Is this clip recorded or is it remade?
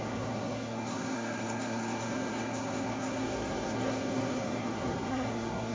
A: remade